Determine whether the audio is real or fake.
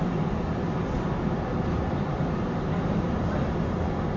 real